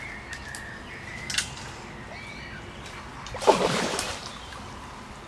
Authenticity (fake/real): real